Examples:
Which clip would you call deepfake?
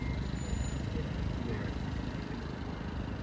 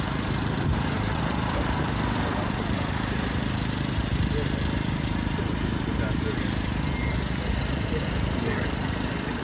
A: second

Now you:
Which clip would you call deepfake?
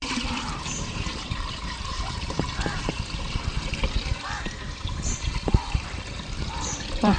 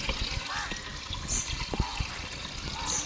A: first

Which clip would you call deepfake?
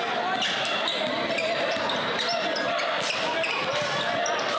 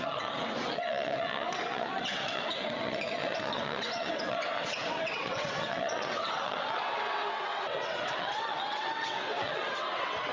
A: second